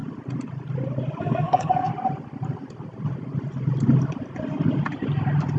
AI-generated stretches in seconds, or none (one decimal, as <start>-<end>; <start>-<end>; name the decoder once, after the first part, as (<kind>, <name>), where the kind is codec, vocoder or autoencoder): 1.2-1.9 (codec, SNAC)